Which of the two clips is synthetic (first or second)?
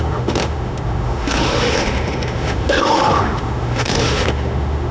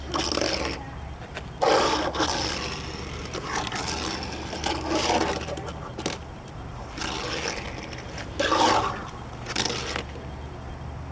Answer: first